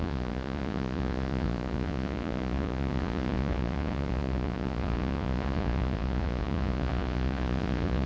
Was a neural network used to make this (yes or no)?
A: yes